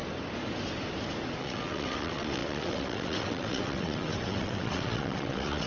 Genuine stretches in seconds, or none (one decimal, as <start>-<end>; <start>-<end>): 0.0-1.4